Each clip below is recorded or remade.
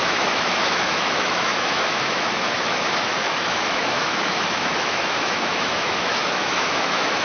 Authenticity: remade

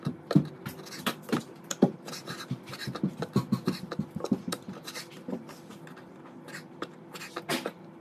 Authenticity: remade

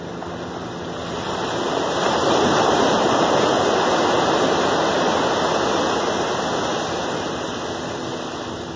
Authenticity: recorded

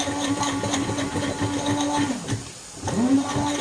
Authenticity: recorded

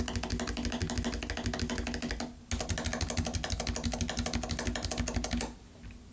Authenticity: recorded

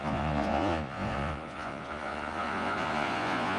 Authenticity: remade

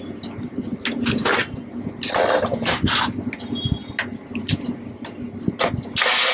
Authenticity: recorded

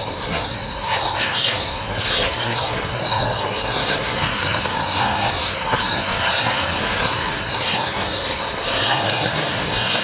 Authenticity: remade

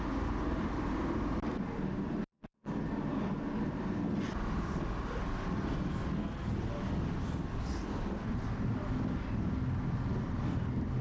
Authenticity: recorded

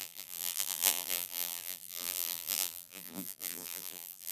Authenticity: remade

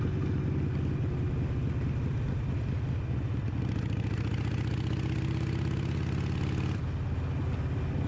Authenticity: recorded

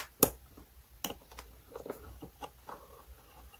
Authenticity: recorded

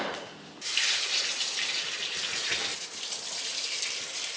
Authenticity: remade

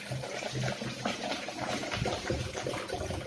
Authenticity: recorded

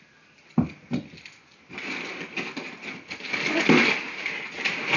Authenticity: recorded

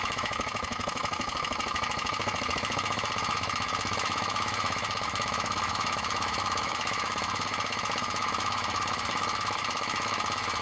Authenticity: remade